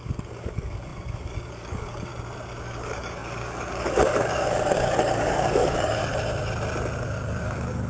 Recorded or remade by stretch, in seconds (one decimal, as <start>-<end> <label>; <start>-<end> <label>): 0.0-2.1 remade; 2.1-2.6 recorded; 2.6-6.0 remade; 6.0-7.0 recorded; 7.0-7.9 remade